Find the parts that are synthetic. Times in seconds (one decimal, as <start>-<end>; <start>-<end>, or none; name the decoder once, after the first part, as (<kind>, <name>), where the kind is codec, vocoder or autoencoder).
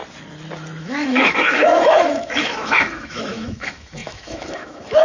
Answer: 0.8-5.0 (autoencoder, DAC-VAE)